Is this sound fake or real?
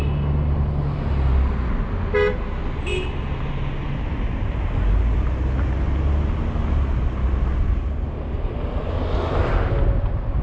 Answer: real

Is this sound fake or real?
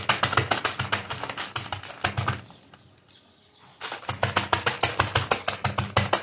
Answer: real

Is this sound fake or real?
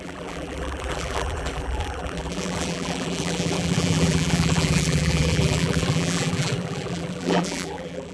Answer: fake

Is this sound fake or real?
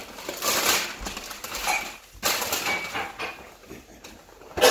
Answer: real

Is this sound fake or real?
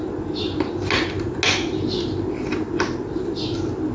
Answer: real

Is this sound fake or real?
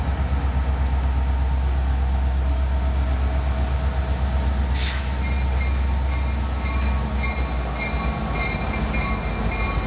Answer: real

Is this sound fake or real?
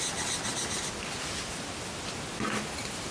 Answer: real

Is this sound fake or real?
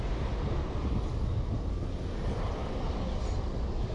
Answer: real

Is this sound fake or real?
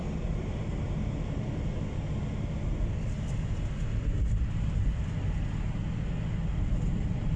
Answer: real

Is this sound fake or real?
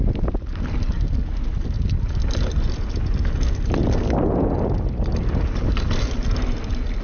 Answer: real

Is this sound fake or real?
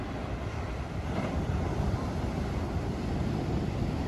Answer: fake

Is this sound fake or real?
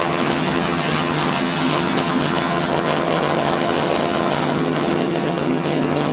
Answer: fake